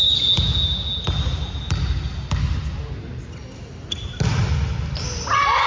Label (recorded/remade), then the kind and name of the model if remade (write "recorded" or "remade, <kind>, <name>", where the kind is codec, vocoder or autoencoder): recorded